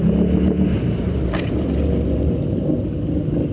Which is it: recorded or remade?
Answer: recorded